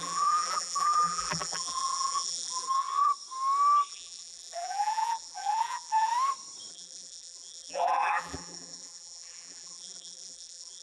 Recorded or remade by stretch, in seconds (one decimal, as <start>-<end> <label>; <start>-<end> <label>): 0.0-3.1 remade; 3.1-3.9 recorded; 3.9-6.1 remade; 6.1-6.7 recorded; 6.7-10.8 remade